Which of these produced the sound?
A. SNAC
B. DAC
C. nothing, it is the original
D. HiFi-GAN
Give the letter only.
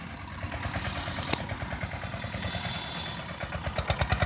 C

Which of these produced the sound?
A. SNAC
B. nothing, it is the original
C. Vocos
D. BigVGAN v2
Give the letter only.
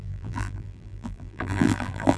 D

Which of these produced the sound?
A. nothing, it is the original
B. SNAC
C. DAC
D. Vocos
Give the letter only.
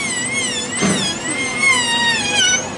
A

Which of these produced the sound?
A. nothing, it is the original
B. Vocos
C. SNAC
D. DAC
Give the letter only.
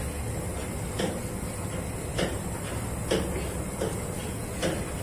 A